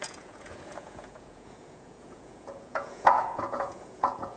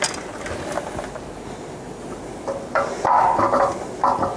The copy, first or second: first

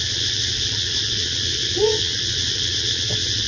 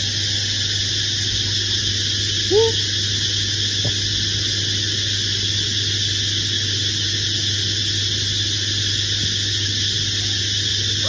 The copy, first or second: first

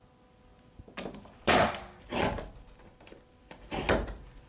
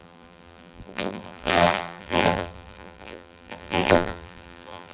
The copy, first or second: second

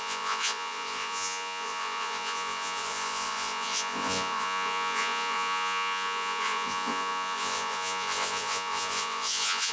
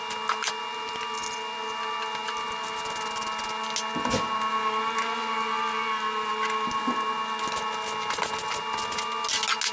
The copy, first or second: first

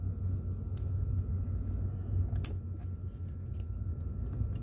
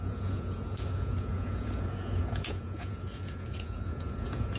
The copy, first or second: second